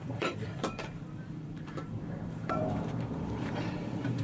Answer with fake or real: fake